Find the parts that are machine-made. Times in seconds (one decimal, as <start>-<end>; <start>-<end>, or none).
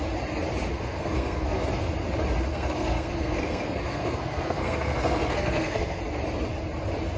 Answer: 0.7-1.6; 2.5-6.0